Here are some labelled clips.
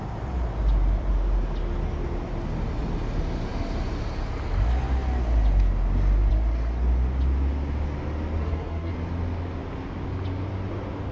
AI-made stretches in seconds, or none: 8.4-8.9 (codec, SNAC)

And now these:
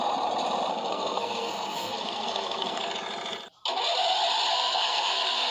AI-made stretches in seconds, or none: 0.7-2.8 (codec, SNAC); 4.5-5.5